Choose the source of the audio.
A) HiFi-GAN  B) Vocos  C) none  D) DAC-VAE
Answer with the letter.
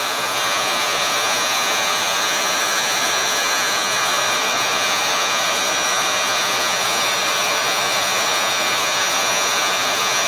B